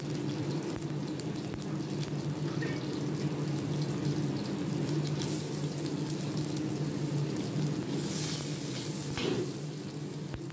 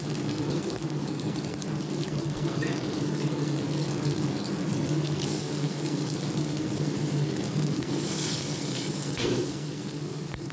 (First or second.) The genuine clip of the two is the first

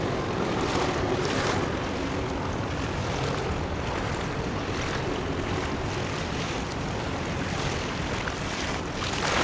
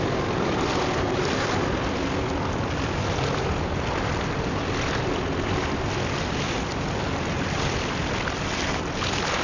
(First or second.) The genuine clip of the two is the second